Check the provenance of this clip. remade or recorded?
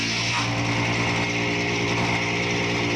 recorded